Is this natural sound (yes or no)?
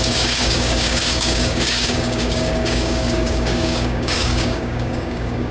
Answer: no